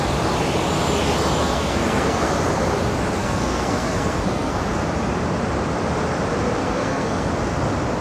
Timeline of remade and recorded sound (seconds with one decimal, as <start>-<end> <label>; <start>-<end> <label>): 0.0-1.4 recorded; 1.4-2.3 remade; 2.3-3.2 recorded; 3.2-4.6 remade; 4.6-6.6 recorded; 6.6-7.3 remade; 7.3-8.0 recorded